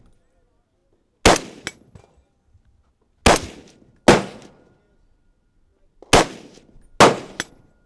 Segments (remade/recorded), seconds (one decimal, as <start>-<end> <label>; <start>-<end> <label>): 0.0-7.9 recorded